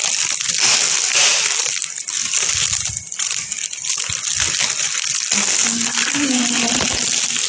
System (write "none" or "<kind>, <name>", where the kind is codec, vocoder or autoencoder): none